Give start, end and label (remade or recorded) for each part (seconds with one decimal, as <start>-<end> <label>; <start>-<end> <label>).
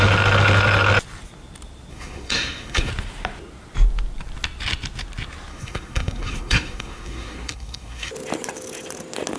0.0-1.9 recorded; 1.9-2.9 remade; 2.9-5.5 recorded; 5.5-8.1 remade; 8.1-9.4 recorded